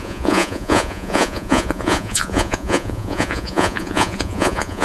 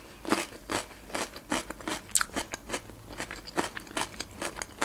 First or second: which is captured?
second